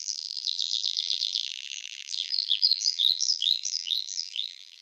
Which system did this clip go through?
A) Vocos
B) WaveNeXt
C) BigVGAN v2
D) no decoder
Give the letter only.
C